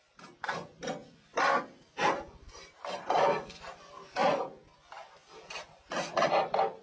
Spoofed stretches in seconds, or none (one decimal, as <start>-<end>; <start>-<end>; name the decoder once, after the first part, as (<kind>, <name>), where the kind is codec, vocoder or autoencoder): 1.0-4.4 (vocoder, BigVGAN v2); 5.0-6.8